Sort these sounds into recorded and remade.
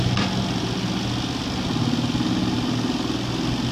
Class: recorded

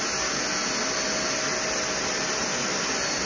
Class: recorded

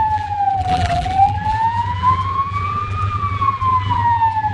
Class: remade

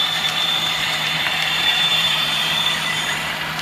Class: remade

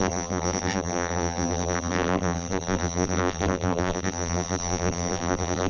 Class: remade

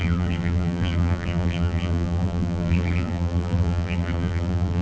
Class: remade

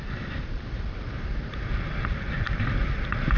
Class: remade